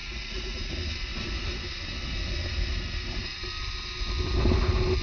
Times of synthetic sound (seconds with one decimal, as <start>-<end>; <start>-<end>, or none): 0.0-0.7

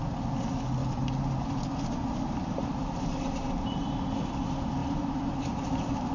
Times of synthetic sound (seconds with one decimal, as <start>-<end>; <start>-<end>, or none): 0.8-1.6; 2.4-4.3; 4.8-5.5

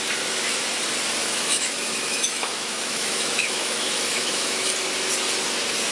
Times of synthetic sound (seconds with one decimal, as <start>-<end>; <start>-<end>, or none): 1.2-4.7

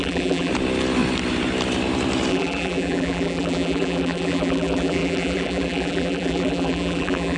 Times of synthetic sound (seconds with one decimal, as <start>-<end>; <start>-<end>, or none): 0.0-0.5; 2.3-7.4

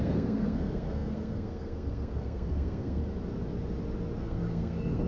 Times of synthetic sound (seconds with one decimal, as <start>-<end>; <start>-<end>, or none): 0.0-3.0; 4.2-5.1